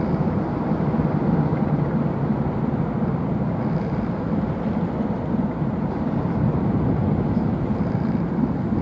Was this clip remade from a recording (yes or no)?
no